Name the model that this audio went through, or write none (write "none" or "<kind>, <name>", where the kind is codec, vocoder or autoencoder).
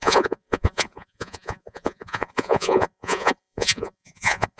vocoder, Vocos